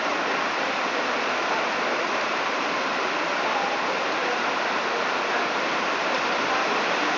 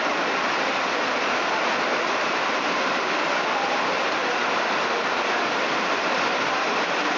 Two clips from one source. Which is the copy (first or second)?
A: second